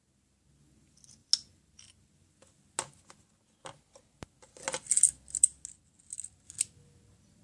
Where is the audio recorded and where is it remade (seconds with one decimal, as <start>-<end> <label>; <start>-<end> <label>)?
0.0-7.4 recorded